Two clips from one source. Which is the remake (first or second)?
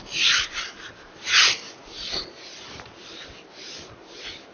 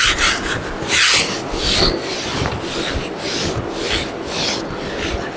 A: first